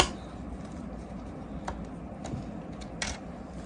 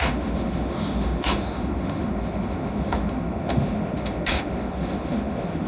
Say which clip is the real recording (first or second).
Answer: first